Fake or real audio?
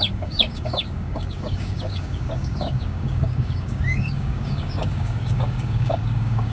fake